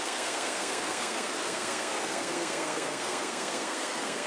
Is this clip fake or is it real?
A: fake